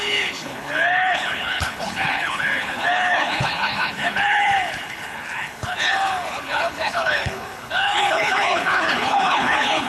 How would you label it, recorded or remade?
remade